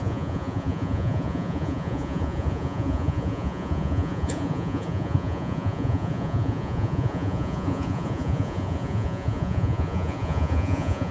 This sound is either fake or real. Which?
fake